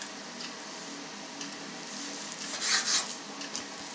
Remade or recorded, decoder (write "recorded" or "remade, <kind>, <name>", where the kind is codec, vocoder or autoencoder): recorded